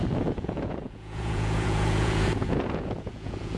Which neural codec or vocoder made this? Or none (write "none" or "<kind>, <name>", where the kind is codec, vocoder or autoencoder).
vocoder, Vocos